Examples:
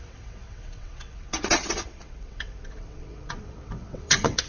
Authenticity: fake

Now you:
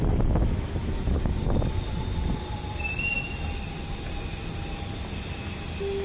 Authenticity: real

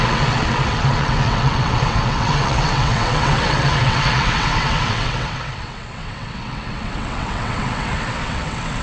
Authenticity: fake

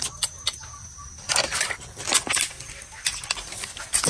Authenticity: real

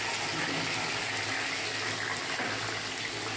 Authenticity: real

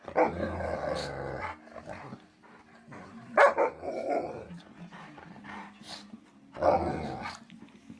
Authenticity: real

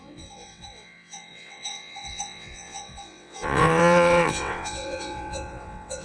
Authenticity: fake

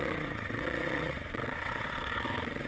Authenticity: fake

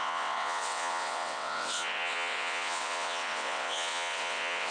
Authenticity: fake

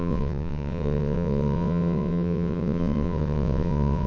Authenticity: fake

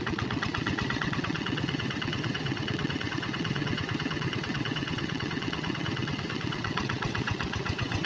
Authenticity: fake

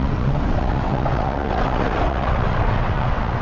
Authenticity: fake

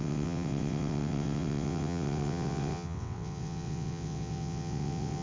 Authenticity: fake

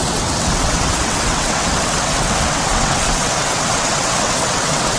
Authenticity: fake